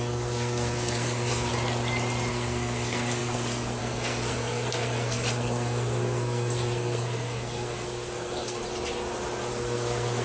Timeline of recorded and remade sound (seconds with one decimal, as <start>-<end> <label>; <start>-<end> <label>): 0.0-1.5 remade; 1.5-2.3 recorded; 2.3-8.6 remade; 8.6-9.5 recorded; 9.5-10.2 remade